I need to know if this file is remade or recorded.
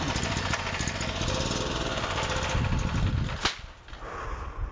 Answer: recorded